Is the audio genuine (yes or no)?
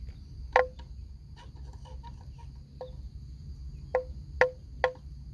yes